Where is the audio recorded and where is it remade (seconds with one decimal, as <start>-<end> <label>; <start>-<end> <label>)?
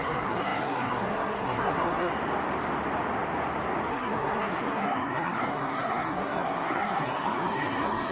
0.0-2.1 remade; 2.1-3.9 recorded; 3.9-8.1 remade